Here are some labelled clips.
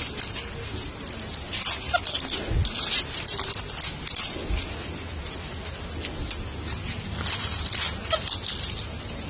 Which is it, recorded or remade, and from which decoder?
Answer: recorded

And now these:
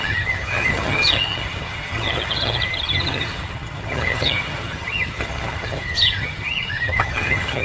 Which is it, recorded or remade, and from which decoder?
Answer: remade, vocoder, HiFi-GAN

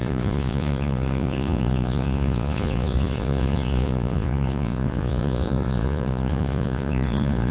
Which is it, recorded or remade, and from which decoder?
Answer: remade, vocoder, Vocos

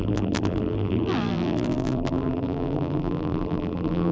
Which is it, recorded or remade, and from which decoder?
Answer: remade, vocoder, BigVGAN v2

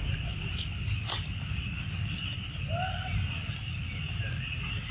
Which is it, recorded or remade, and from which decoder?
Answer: recorded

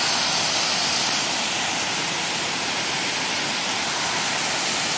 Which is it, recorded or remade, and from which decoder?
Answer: recorded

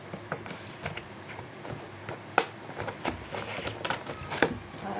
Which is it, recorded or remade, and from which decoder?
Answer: recorded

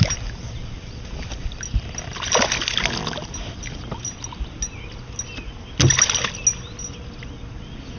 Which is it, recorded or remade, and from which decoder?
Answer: recorded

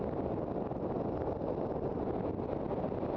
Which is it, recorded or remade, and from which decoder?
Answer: recorded